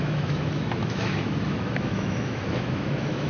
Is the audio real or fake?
fake